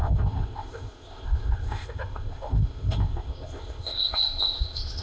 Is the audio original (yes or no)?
no